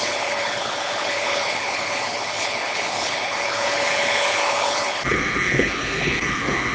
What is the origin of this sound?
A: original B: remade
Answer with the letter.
B